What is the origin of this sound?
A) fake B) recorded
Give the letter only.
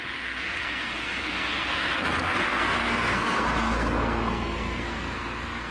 A